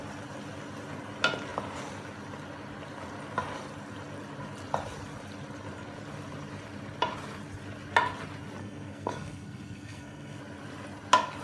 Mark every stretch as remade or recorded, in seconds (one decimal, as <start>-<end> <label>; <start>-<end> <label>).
0.0-8.6 recorded; 8.6-10.4 remade; 10.4-11.4 recorded